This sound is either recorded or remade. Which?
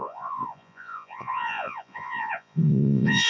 remade